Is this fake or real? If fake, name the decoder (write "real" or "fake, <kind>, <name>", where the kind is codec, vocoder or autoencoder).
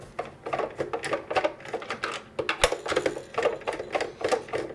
real